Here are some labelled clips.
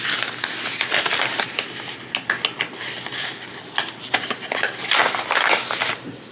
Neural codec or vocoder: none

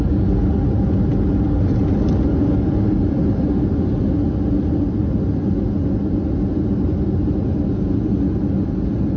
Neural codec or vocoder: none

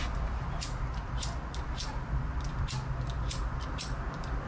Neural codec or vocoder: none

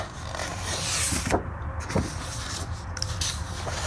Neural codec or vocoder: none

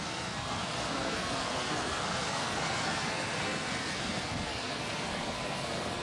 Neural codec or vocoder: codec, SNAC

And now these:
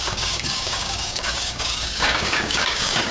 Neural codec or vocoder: codec, DAC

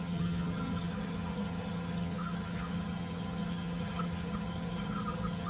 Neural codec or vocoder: vocoder, HiFi-GAN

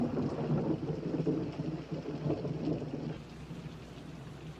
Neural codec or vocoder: none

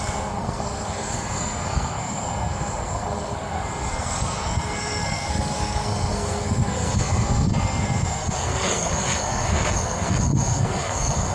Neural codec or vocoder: codec, SNAC